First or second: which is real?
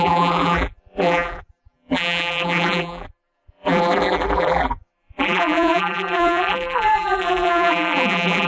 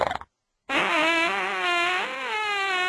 second